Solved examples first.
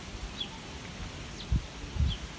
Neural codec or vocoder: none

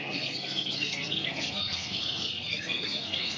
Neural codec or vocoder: codec, SNAC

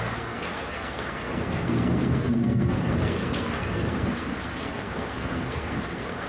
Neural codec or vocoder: codec, SNAC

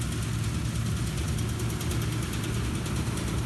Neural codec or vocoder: none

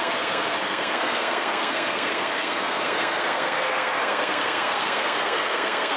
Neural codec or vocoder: codec, SNAC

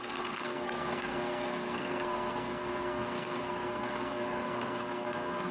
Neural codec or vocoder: codec, SNAC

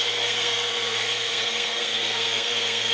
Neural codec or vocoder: codec, SNAC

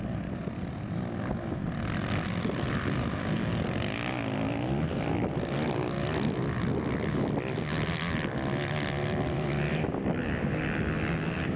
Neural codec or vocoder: none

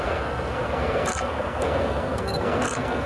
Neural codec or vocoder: codec, SNAC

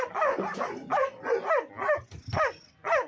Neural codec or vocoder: none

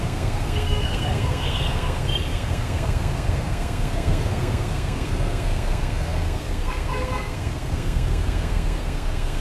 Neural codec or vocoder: codec, SNAC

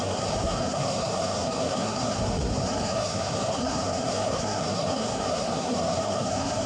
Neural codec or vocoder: codec, SNAC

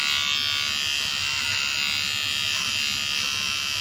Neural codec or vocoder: none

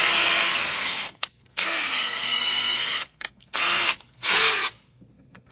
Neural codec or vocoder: codec, SNAC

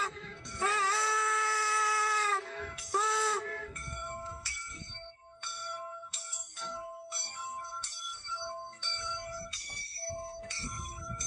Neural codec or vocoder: codec, SNAC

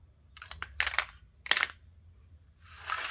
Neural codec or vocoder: none